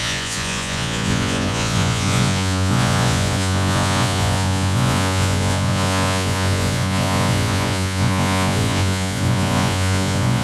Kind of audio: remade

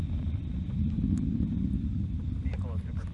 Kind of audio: remade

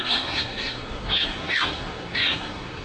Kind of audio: remade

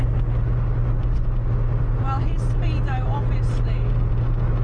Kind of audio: recorded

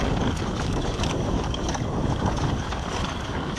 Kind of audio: remade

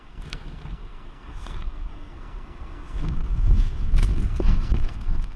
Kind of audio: remade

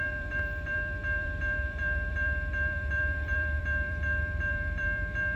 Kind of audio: remade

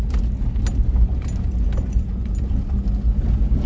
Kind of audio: recorded